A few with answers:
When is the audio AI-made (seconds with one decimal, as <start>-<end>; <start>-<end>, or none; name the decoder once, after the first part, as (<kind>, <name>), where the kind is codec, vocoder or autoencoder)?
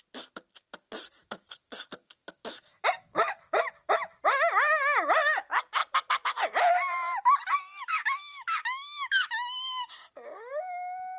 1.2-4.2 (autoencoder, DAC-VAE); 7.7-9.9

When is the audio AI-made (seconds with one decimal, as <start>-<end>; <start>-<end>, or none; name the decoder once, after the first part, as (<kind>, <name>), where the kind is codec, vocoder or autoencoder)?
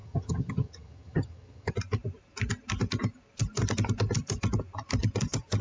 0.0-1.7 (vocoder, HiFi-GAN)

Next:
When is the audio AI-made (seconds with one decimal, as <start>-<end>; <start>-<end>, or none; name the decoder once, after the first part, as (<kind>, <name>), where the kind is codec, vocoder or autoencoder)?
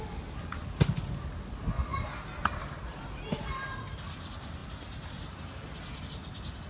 none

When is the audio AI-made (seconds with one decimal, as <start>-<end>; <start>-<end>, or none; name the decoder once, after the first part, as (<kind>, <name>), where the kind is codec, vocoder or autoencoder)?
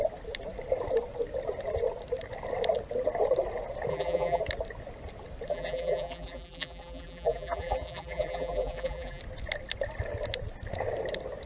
3.9-4.4 (vocoder, BigVGAN v2); 5.5-9.2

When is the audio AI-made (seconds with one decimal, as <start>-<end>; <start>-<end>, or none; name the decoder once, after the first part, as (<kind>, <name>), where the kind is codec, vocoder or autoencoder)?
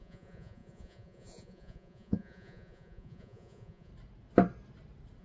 0.0-3.9 (vocoder, Vocos)